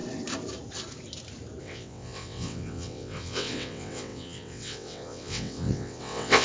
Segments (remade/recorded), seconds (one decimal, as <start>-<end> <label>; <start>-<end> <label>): 0.0-1.6 recorded; 1.6-6.4 remade